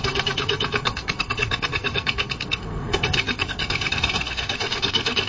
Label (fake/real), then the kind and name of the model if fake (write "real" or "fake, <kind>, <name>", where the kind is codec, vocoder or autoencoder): fake, codec, SNAC